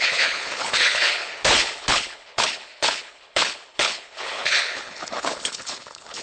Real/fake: fake